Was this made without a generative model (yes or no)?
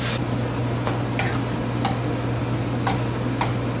yes